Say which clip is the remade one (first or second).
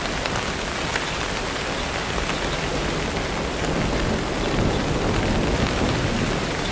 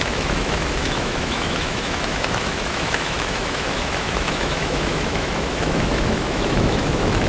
second